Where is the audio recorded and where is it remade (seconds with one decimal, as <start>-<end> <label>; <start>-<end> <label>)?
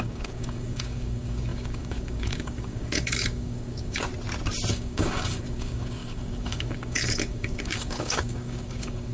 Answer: 0.0-4.1 remade; 4.1-4.7 recorded; 4.7-9.1 remade